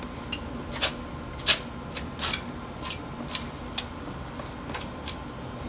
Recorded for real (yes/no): yes